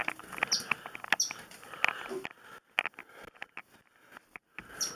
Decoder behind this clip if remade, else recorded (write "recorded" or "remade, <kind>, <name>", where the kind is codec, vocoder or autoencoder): recorded